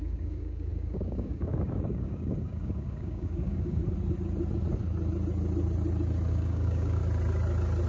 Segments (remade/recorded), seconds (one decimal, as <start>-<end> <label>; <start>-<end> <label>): 0.0-3.8 remade; 3.8-6.3 recorded; 6.3-7.0 remade; 7.0-7.9 recorded